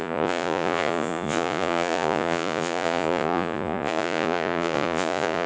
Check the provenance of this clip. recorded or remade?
remade